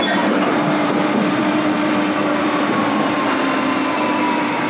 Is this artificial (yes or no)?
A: yes